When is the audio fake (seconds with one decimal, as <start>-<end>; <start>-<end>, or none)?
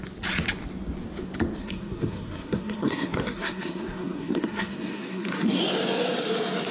1.6-5.6